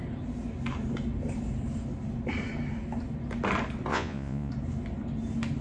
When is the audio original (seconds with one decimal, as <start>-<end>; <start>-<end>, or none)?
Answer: 0.0-3.9; 4.5-5.6